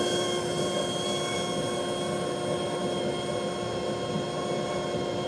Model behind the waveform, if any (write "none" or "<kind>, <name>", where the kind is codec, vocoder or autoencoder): none